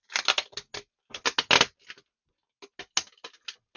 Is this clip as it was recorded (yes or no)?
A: yes